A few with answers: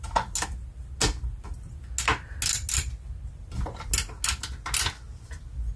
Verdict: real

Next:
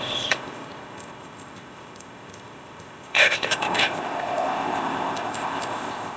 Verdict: fake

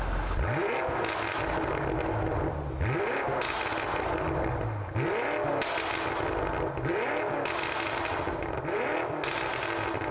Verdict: real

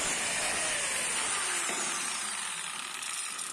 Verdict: fake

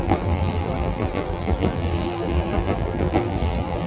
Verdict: fake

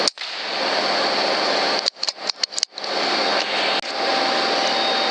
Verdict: real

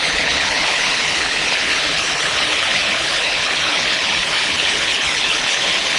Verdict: fake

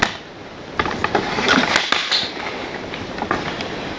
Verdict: real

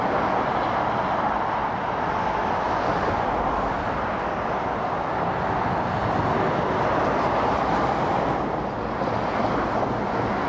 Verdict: real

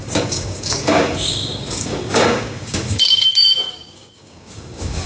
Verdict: fake